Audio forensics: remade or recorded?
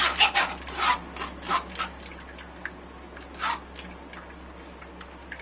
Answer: recorded